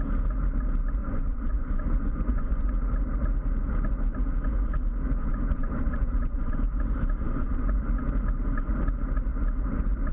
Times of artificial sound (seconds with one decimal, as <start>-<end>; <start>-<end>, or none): 1.0-2.7; 5.2-6.6; 7.2-7.8